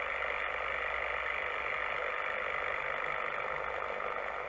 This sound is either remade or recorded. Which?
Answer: recorded